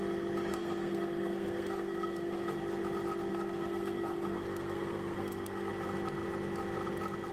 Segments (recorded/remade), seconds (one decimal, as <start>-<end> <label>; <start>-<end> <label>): 0.0-0.5 recorded; 0.5-2.6 remade; 2.6-3.3 recorded; 3.3-5.7 remade; 5.7-7.3 recorded